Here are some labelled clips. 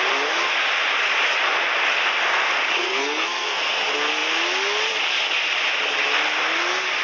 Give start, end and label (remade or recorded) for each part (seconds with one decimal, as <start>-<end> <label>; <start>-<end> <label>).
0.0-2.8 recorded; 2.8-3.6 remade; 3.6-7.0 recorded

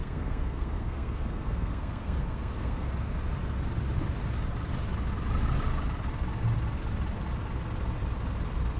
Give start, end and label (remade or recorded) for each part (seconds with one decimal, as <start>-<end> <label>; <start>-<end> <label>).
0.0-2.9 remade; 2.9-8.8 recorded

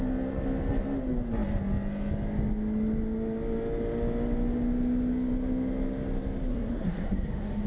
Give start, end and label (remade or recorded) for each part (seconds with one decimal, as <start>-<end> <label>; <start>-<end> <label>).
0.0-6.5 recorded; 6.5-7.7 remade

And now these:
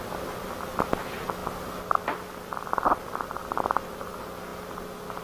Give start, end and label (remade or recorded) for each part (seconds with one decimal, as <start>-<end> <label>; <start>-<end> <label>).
0.0-5.2 recorded

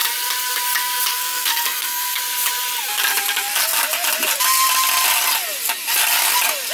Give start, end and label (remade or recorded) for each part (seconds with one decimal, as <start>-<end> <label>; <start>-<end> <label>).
0.0-1.1 recorded; 1.1-2.2 remade; 2.2-6.7 recorded